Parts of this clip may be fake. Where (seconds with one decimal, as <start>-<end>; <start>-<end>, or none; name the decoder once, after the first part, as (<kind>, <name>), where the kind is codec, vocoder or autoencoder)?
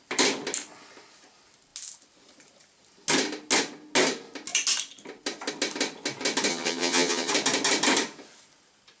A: 6.5-7.3 (vocoder, HiFi-GAN)